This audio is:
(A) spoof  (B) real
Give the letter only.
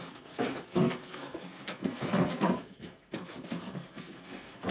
A